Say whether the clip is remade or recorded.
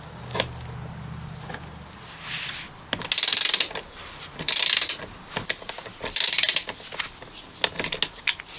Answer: recorded